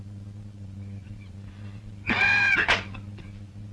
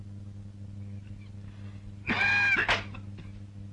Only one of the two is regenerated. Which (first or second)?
first